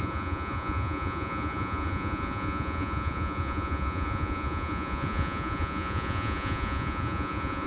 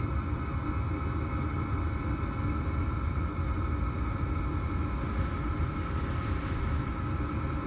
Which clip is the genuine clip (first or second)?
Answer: second